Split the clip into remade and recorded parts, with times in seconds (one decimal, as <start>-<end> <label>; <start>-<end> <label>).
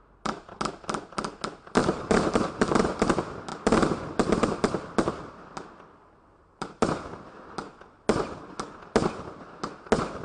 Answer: 0.0-1.8 recorded; 1.8-2.5 remade; 2.5-10.2 recorded